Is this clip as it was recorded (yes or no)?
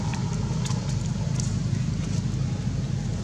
yes